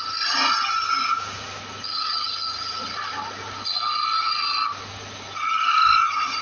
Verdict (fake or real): real